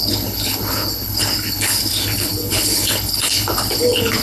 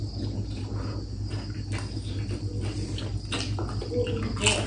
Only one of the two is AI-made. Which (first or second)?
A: first